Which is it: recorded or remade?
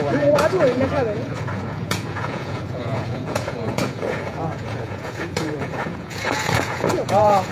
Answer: remade